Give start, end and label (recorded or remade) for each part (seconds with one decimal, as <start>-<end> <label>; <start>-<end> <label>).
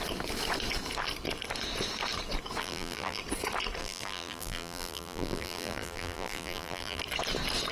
0.0-2.6 recorded; 2.6-3.2 remade; 3.2-3.8 recorded; 3.8-7.0 remade; 7.0-7.7 recorded